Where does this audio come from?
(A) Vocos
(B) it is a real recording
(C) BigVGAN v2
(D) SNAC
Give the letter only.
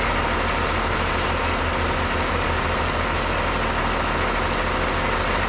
B